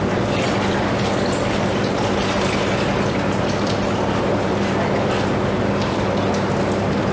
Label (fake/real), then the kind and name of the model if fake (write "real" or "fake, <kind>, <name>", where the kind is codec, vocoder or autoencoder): real